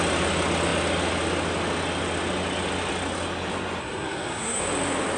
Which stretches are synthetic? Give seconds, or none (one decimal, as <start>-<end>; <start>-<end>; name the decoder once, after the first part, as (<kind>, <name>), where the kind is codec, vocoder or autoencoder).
3.8-4.6 (codec, SNAC)